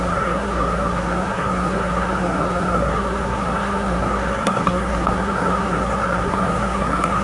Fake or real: fake